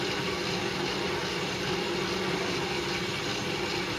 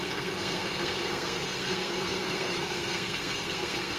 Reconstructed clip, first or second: second